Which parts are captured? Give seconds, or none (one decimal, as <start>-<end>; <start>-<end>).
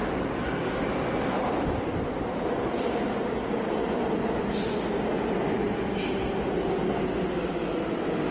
0.0-8.3